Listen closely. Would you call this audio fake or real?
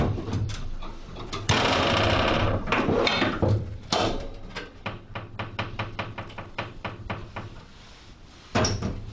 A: fake